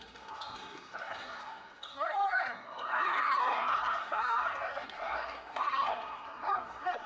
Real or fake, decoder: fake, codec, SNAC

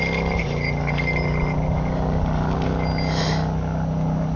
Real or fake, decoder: real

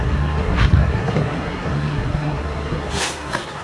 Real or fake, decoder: fake, codec, SNAC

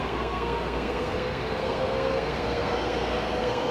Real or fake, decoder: fake, codec, SNAC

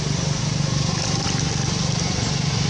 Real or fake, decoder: real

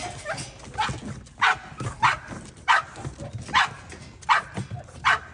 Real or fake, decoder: real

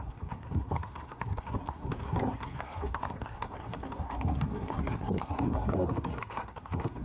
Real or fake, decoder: fake, codec, SNAC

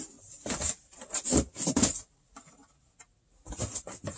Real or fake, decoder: real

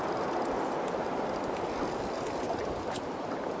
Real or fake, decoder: real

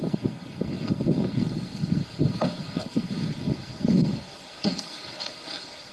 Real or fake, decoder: fake, codec, SNAC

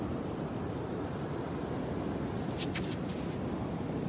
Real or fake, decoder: real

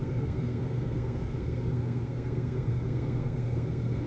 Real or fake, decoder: fake, codec, SNAC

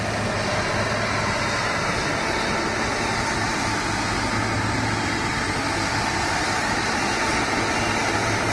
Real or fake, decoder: real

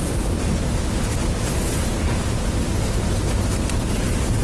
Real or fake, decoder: real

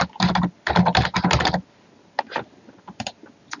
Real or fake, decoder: real